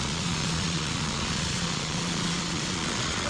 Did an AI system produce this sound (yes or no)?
yes